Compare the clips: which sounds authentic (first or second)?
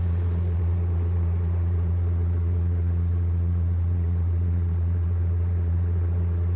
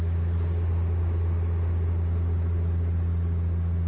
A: second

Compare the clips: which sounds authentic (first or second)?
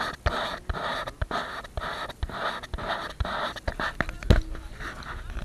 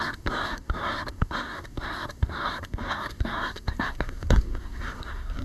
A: first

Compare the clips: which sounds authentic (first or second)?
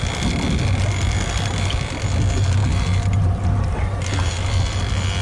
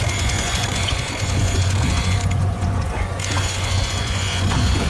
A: first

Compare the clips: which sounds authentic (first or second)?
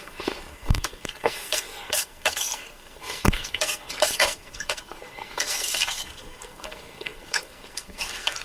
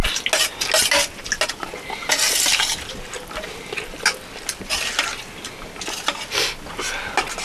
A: second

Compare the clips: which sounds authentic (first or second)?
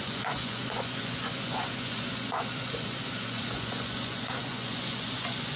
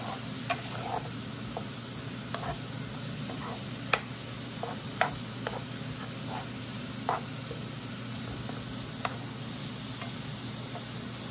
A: second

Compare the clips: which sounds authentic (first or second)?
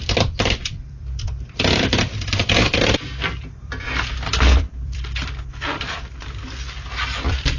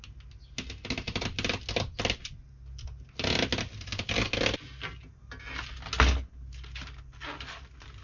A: second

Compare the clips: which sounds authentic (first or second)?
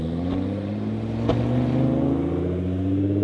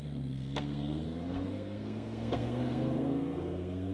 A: first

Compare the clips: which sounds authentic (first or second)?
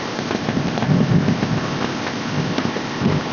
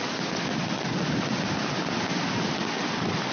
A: second